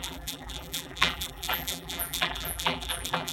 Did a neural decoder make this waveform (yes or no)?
yes